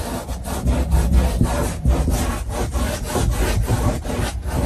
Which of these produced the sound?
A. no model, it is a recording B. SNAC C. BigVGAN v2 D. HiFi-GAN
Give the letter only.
A